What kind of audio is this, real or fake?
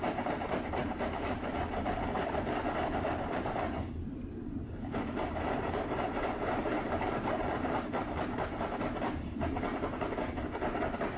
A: fake